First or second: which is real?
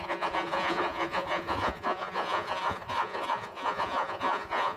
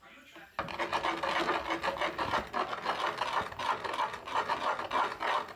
second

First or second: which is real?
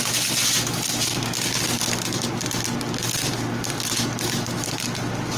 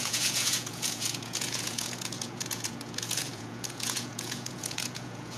first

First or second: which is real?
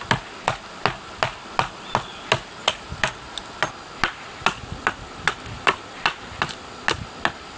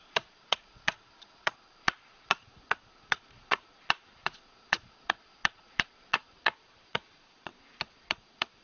first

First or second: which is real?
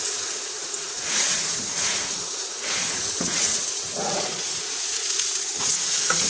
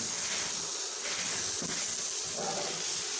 second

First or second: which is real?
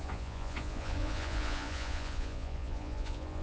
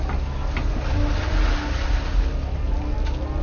second